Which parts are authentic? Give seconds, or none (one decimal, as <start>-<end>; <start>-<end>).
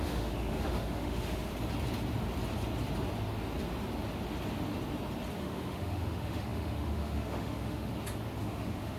1.5-5.4; 7.9-8.4